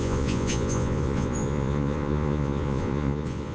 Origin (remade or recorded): remade